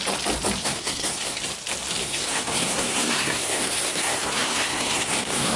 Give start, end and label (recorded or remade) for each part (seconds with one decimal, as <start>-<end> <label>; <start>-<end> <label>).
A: 0.0-0.6 recorded; 0.6-1.4 remade; 1.4-2.0 recorded; 2.0-5.6 remade